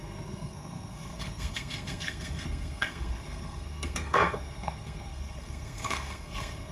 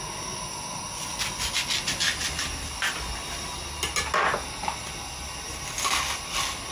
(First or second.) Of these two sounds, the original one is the second